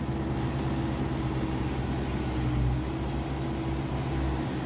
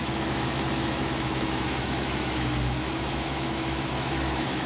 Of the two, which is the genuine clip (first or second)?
first